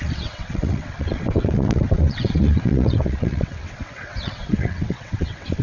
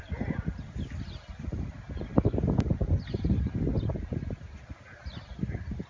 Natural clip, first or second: second